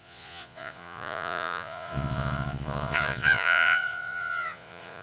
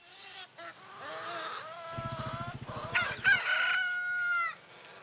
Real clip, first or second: second